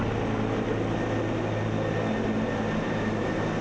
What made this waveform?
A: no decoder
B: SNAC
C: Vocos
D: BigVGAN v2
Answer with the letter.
A